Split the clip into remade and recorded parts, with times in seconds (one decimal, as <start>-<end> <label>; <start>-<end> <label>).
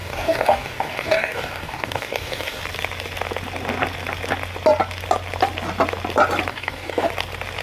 0.0-2.6 remade; 2.6-6.5 recorded; 6.5-7.1 remade; 7.1-7.6 recorded